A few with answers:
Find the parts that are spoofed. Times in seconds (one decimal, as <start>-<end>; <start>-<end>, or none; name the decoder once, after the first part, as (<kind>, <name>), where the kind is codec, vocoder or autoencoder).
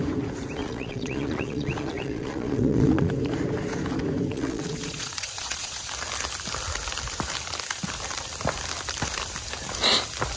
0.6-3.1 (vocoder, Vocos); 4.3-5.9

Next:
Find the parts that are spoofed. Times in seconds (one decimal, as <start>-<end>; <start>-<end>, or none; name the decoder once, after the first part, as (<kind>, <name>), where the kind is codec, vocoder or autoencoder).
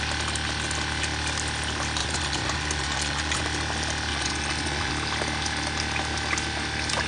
2.0-3.4 (vocoder, Vocos); 4.1-4.9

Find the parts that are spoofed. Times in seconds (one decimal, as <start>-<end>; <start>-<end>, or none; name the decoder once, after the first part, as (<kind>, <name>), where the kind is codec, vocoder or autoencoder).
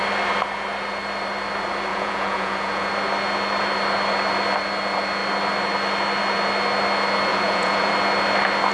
1.9-2.9 (vocoder, Vocos); 7.3-7.9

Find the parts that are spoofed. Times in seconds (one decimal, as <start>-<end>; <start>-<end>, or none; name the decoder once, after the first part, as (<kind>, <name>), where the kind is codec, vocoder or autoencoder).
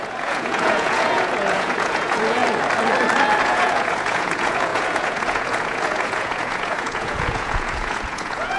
0.0-2.4 (vocoder, Vocos); 3.4-8.6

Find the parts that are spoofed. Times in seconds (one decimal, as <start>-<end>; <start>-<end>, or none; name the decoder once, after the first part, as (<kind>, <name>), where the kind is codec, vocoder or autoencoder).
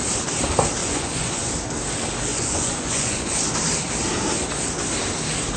0.8-1.5 (vocoder, Vocos); 2.3-3.3